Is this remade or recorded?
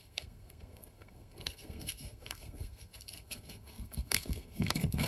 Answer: remade